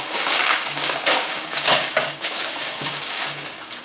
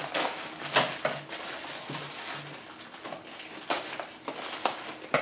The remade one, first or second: first